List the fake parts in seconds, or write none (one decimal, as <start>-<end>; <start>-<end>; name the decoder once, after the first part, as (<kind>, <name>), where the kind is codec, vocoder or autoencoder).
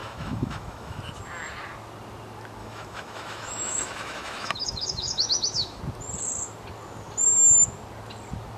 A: 0.0-1.0 (autoencoder, DAC-VAE); 2.6-5.8